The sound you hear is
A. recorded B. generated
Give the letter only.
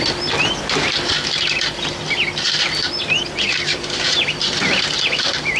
A